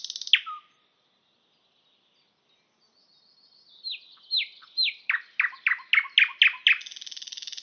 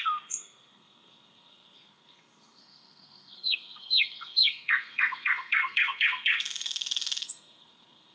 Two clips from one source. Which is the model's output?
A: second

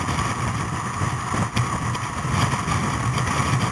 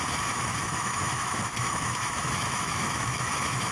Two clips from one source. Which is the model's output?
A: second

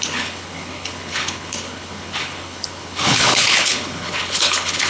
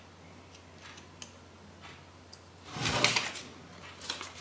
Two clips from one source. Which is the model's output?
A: first